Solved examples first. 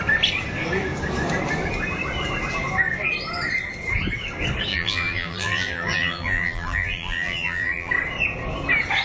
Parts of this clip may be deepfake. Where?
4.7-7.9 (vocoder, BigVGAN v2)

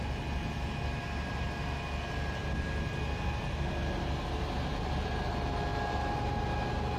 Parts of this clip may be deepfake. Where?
none

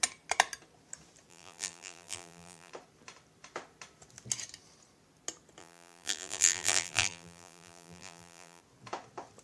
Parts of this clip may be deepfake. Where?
1.3-2.7 (vocoder, BigVGAN v2); 5.6-8.6

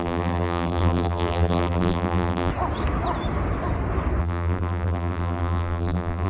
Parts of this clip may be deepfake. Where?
0.0-2.5 (vocoder, BigVGAN v2); 4.2-6.3

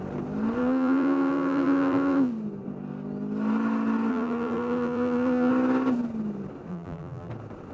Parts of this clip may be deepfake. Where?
0.6-2.3 (vocoder, BigVGAN v2); 4.1-5.5; 6.7-7.3